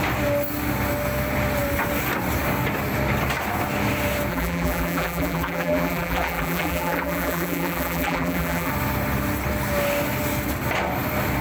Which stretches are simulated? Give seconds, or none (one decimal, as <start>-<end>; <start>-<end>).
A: 4.3-8.7